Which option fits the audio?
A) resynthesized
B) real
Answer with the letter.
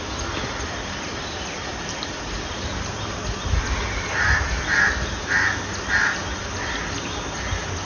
B